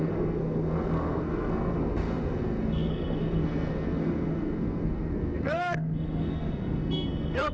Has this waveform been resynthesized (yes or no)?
yes